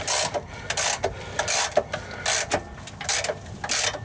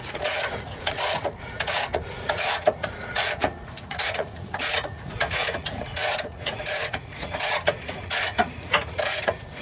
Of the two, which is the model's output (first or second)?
second